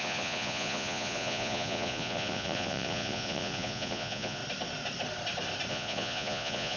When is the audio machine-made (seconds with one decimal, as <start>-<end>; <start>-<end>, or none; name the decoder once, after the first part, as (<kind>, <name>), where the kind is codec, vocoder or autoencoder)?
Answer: 0.0-4.4 (vocoder, Vocos); 5.7-6.8